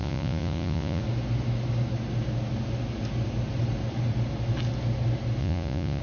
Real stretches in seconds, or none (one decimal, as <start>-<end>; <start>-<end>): 1.0-5.4